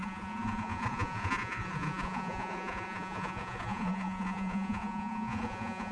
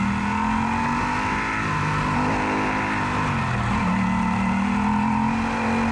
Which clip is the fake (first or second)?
first